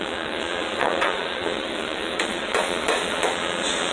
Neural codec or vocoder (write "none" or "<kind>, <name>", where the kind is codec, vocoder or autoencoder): vocoder, Vocos